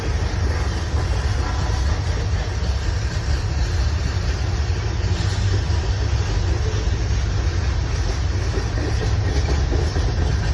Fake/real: real